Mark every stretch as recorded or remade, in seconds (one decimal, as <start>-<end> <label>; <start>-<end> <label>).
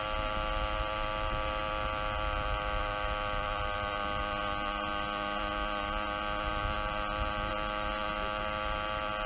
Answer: 0.0-9.3 recorded